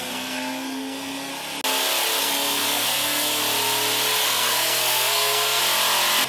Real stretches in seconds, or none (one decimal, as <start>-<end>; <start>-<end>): 1.3-2.2; 3.4-4.2; 5.6-6.3